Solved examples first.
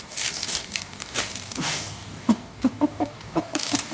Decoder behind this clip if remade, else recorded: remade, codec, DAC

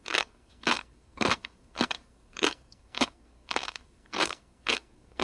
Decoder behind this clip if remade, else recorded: remade, codec, SNAC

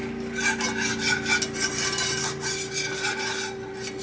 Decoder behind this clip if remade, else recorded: recorded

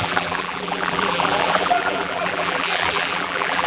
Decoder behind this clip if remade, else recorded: remade, vocoder, BigVGAN v2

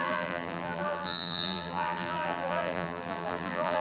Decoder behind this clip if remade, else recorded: remade, vocoder, BigVGAN v2